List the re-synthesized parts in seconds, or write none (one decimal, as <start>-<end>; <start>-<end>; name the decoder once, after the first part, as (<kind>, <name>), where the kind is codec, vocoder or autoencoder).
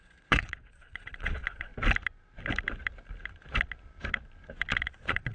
0.0-1.7 (vocoder, Vocos); 4.7-5.3